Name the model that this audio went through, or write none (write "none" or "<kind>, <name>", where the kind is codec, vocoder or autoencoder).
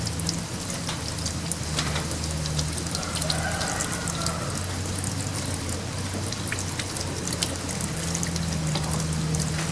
none